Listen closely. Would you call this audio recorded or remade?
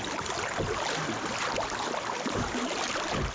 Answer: recorded